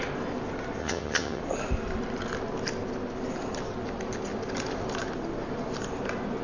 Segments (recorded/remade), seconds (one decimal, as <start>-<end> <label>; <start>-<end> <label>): 0.0-0.8 recorded; 0.8-1.4 remade; 1.4-6.4 recorded